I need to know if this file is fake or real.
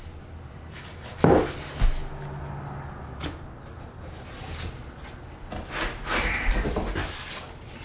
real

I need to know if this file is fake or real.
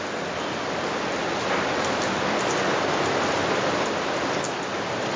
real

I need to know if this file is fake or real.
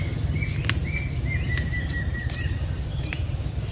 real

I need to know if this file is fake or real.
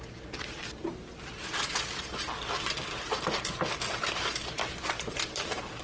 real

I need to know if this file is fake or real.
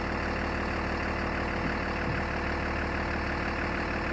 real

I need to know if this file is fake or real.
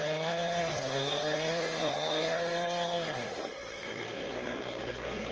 fake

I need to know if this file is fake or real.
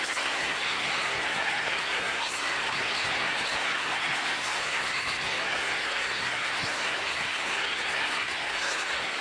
fake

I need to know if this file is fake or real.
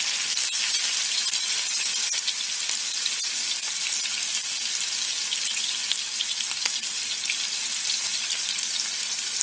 real